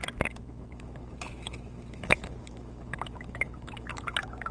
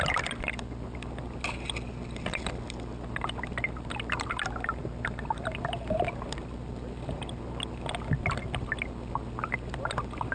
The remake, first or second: first